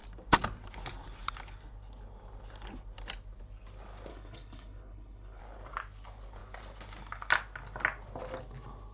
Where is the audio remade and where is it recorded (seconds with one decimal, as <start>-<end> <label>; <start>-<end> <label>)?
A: 0.0-4.1 recorded; 4.1-5.4 remade; 5.4-8.9 recorded